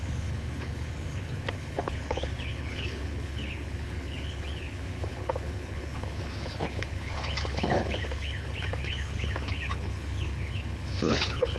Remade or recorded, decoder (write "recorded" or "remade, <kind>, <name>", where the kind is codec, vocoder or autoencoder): remade, codec, HILCodec